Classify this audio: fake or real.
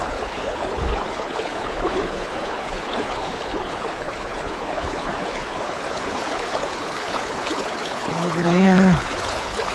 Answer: fake